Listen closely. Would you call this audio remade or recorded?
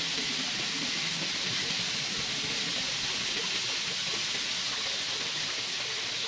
recorded